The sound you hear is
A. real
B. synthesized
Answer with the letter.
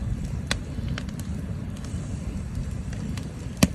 B